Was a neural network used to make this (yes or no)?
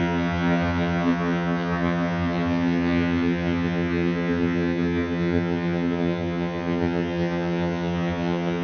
yes